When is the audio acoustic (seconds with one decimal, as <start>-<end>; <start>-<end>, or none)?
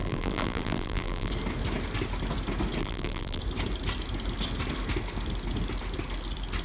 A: 1.3-2.8; 3.4-6.6